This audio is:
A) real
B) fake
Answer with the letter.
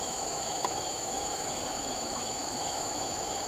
B